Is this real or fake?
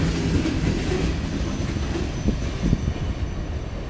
real